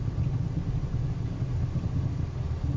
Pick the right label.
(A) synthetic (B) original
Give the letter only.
B